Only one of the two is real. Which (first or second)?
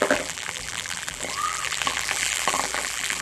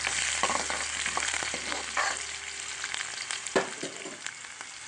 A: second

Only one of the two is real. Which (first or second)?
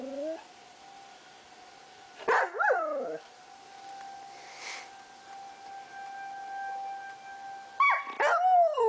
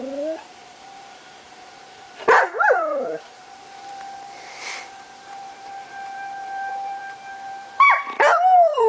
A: first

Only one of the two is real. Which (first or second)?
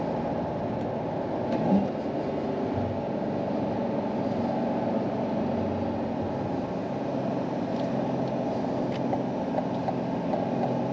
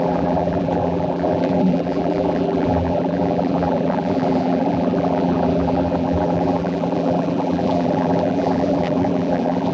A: first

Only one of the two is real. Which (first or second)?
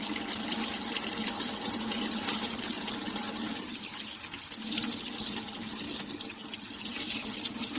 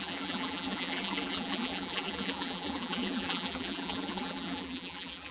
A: first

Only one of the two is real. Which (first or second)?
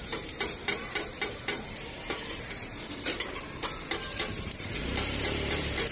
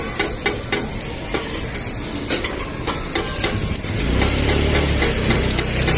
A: second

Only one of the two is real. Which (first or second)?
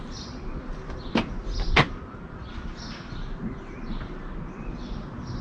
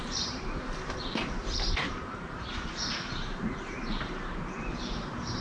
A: first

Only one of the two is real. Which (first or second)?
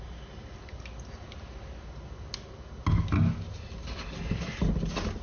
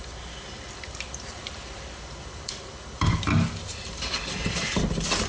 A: first